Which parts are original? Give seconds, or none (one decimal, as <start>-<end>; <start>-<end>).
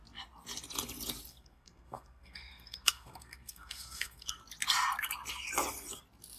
0.0-1.3; 4.4-6.4